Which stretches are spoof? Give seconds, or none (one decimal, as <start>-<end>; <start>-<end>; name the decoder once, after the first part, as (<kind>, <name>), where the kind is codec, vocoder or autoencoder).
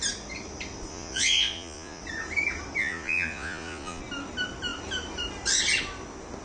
0.9-2.0 (vocoder, Vocos); 2.8-4.0